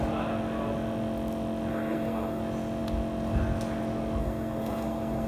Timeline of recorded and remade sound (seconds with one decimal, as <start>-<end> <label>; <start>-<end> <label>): 0.0-1.7 recorded; 1.7-2.4 remade; 2.4-4.2 recorded; 4.2-5.3 remade